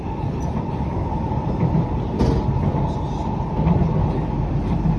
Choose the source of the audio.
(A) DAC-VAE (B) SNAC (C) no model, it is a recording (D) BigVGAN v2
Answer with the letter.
C